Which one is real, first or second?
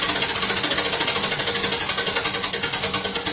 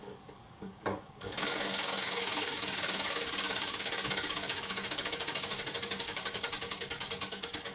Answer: first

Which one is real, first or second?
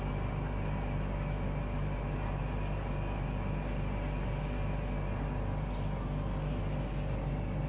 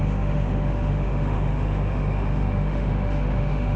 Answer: first